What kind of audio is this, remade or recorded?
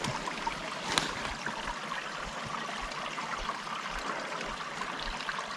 recorded